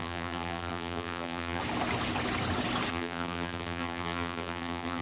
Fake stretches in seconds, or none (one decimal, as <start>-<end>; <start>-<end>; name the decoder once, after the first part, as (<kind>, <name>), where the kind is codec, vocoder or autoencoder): 0.0-1.6 (vocoder, BigVGAN v2); 2.9-5.0

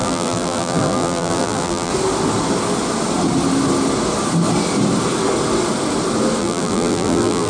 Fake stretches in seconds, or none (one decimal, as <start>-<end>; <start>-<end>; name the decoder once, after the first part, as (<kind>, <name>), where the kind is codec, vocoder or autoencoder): 0.0-1.9 (vocoder, BigVGAN v2); 6.4-7.5

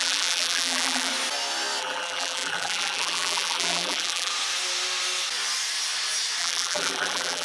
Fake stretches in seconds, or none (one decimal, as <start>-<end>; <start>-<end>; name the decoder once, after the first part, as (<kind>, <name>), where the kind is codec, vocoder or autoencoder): 0.0-1.1 (vocoder, BigVGAN v2); 1.8-4.3; 6.4-7.4

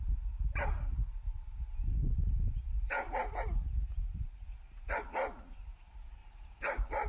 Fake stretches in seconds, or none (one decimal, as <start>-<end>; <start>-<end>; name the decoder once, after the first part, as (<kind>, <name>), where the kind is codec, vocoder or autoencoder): 6.2-7.1 (vocoder, BigVGAN v2)

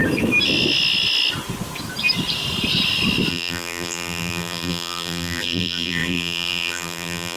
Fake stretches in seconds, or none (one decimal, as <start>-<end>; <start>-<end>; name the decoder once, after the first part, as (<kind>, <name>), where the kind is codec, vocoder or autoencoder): 3.3-7.4 (vocoder, BigVGAN v2)